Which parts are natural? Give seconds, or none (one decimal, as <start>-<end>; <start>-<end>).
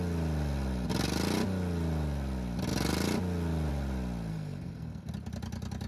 0.0-4.3; 5.1-5.9